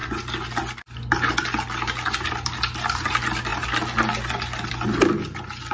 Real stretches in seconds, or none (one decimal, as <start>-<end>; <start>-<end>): 0.0-5.7